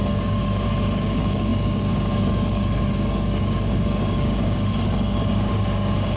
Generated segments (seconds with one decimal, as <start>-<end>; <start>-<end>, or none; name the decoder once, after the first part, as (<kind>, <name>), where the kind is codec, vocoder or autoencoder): 0.0-6.2 (codec, DAC)